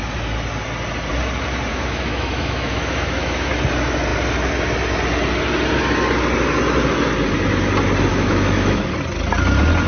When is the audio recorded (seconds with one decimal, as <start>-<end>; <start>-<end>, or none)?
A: 0.0-1.7; 3.5-8.1; 8.8-9.9